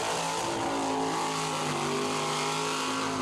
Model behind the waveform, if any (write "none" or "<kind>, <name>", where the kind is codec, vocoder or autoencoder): none